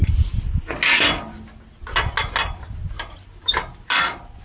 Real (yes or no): yes